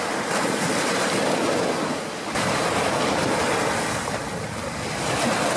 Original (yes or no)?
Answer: yes